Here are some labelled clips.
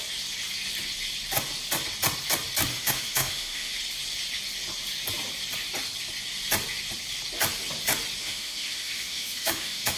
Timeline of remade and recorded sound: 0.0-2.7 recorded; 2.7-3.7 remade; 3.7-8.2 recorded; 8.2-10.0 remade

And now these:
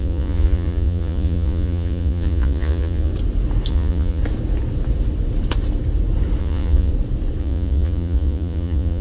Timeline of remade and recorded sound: 0.0-3.1 remade; 3.1-3.7 recorded; 3.7-4.2 remade; 4.2-6.4 recorded; 6.4-6.9 remade; 6.9-7.4 recorded; 7.4-9.0 remade

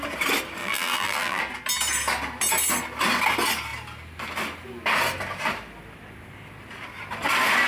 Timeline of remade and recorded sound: 0.0-0.6 recorded; 0.6-1.4 remade; 1.4-7.7 recorded

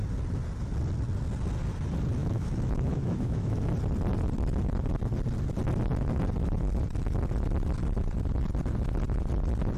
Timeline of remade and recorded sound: 0.0-2.2 recorded; 2.2-3.7 remade; 3.7-9.8 recorded